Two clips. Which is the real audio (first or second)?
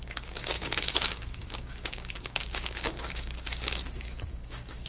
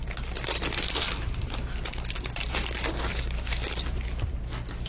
second